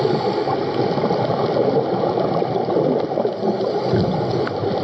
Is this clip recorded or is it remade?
recorded